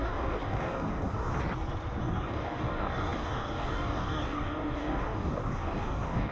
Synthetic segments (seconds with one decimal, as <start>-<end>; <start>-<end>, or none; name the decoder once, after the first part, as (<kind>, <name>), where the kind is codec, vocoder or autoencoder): 0.0-1.3 (codec, DAC); 2.0-6.3